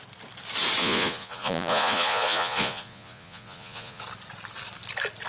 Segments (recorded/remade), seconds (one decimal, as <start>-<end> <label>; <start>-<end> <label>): 0.0-0.8 recorded; 0.8-4.0 remade; 4.0-5.3 recorded